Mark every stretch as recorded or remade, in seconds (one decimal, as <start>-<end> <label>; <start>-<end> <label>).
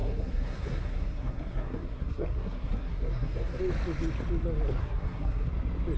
0.0-3.6 remade; 3.6-4.8 recorded; 4.8-5.5 remade; 5.5-6.0 recorded